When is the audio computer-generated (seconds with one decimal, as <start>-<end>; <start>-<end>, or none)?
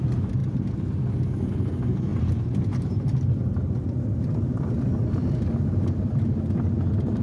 none